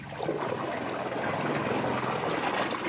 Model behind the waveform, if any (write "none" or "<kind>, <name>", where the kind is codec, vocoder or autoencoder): none